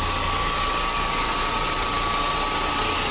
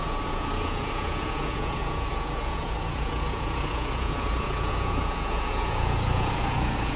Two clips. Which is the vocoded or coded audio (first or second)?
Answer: second